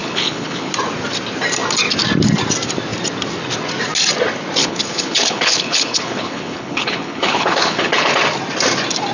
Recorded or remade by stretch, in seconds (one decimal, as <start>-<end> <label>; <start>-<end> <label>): 0.0-0.7 remade; 0.7-4.6 recorded; 4.6-8.1 remade; 8.1-9.1 recorded